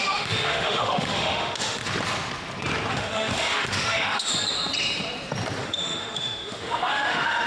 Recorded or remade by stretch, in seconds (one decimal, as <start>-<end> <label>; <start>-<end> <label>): 0.0-1.8 remade; 1.8-2.9 recorded; 2.9-4.3 remade; 4.3-5.6 recorded; 5.6-7.5 remade